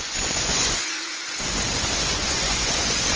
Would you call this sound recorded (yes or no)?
no